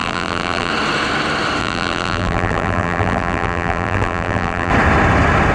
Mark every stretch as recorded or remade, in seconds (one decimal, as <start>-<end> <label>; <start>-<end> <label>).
0.0-0.7 remade; 0.7-1.6 recorded; 1.6-4.7 remade; 4.7-5.5 recorded

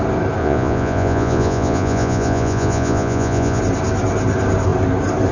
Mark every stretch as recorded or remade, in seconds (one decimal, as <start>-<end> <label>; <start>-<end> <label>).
0.0-0.4 recorded; 0.4-3.6 remade; 3.6-5.3 recorded

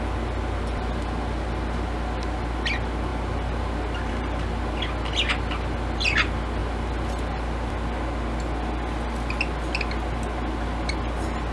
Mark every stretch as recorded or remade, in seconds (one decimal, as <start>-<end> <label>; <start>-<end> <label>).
0.0-11.5 recorded

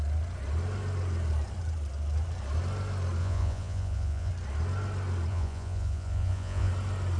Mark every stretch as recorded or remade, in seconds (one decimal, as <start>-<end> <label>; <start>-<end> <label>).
0.0-3.2 recorded; 3.2-4.3 remade; 4.3-5.3 recorded; 5.3-6.7 remade; 6.7-7.2 recorded

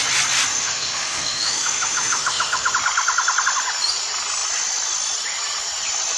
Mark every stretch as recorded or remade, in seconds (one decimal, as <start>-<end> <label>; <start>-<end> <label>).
0.0-0.5 recorded; 0.5-2.7 remade; 2.7-6.2 recorded

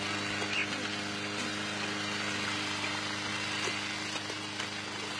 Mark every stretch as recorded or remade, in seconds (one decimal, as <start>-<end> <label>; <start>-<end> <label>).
0.0-5.2 recorded